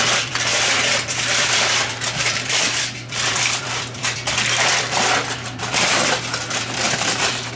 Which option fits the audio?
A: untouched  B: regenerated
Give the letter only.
B